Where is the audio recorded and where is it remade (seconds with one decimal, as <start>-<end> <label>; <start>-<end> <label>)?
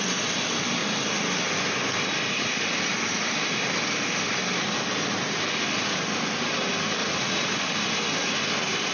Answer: 0.0-7.0 recorded; 7.0-7.6 remade; 7.6-8.9 recorded